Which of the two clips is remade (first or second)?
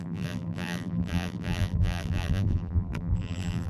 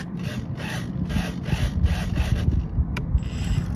first